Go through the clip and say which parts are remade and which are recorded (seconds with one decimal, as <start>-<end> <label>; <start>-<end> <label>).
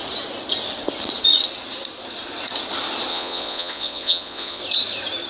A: 0.0-3.1 recorded; 3.1-4.6 remade; 4.6-5.3 recorded